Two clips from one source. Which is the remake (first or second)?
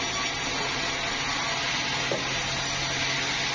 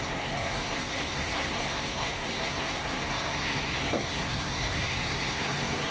second